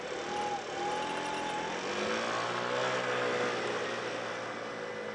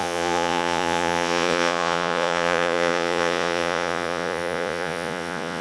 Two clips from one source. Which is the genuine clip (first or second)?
first